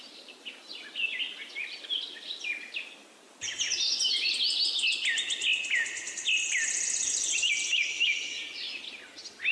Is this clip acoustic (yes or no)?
yes